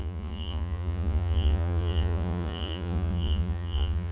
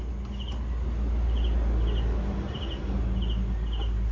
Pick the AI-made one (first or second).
first